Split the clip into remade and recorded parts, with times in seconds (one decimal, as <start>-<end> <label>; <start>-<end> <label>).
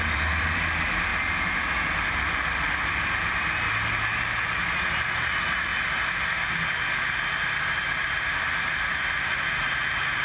0.0-1.1 remade; 1.1-4.6 recorded; 4.6-5.7 remade; 5.7-9.6 recorded; 9.6-10.2 remade